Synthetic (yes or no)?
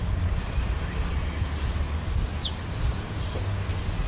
no